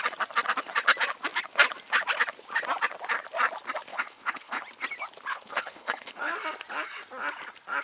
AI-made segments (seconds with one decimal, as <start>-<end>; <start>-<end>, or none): 3.9-4.6; 5.3-6.3